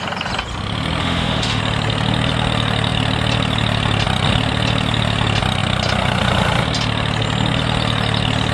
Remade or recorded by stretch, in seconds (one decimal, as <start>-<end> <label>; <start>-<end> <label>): 0.0-1.0 recorded; 1.0-1.6 remade; 1.6-8.5 recorded